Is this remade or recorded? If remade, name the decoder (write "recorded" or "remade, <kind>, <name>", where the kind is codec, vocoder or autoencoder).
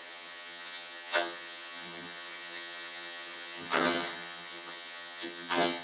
remade, vocoder, HiFi-GAN